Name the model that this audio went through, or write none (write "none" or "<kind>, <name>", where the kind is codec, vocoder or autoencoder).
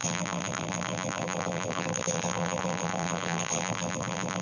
vocoder, BigVGAN v2